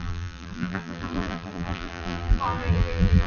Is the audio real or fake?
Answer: fake